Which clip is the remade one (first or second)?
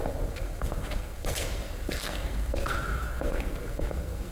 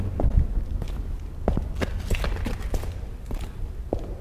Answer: first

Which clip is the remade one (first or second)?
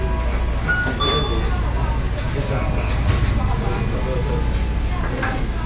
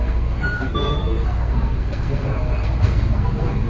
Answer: second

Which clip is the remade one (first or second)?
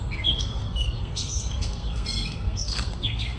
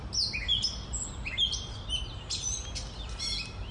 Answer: first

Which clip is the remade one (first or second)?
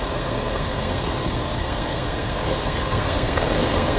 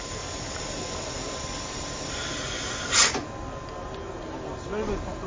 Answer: first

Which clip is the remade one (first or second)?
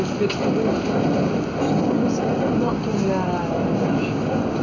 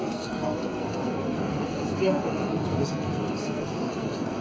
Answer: second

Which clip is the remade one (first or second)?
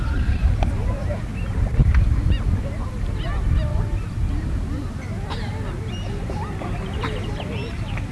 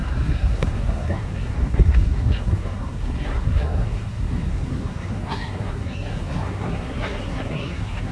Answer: second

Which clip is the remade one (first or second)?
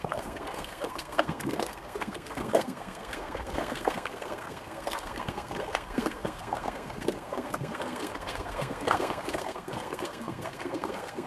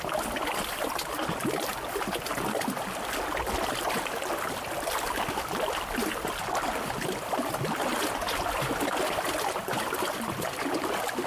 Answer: first